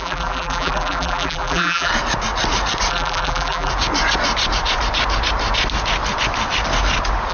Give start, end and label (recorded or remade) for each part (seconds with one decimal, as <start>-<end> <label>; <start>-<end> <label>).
0.0-1.9 remade; 1.9-2.9 recorded; 2.9-3.7 remade; 3.7-7.3 recorded